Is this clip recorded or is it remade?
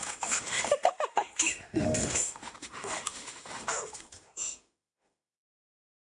remade